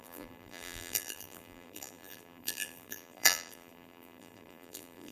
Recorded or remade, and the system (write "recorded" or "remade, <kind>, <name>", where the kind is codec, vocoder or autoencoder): remade, vocoder, BigVGAN v2